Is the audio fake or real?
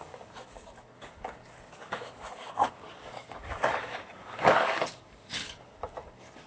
fake